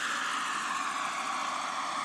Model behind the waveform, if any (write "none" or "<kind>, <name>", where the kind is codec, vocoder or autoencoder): none